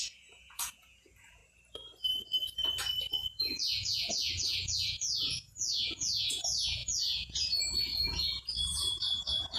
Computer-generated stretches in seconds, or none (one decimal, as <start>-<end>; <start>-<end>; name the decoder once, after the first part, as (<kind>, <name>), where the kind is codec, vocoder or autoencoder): 0.0-1.4 (vocoder, Vocos); 3.1-9.6